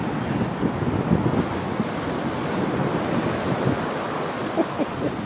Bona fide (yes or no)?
yes